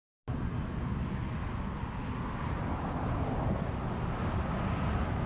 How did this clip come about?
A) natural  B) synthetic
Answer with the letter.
A